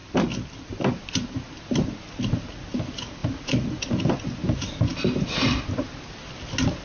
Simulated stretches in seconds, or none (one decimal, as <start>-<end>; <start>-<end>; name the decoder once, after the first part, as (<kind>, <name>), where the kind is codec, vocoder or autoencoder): none